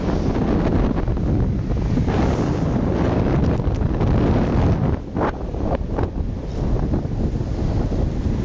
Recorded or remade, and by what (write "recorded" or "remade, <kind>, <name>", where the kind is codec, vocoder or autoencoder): recorded